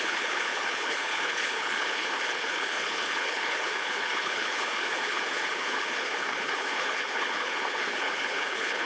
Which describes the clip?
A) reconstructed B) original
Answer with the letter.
A